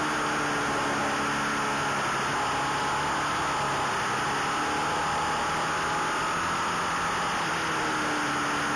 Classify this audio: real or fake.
real